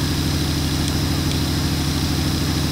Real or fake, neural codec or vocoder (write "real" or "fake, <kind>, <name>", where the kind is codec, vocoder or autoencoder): real